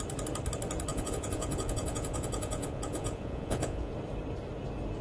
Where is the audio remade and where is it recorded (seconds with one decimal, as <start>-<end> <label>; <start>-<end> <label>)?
0.0-0.9 recorded; 0.9-3.9 remade; 3.9-5.0 recorded